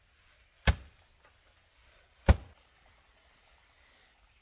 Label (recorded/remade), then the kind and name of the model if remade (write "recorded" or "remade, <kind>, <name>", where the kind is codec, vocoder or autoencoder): remade, vocoder, BigVGAN v2